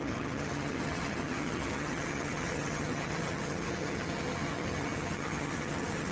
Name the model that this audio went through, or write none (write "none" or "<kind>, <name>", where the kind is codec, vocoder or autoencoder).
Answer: vocoder, HiFi-GAN